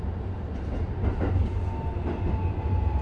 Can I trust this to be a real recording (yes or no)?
yes